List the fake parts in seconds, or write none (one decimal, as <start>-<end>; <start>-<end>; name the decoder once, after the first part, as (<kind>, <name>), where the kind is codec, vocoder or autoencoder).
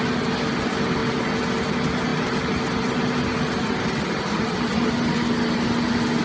none